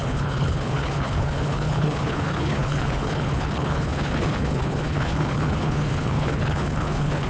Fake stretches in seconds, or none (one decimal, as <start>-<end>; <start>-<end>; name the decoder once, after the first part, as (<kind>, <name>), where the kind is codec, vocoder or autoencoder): 0.0-7.3 (codec, HILCodec)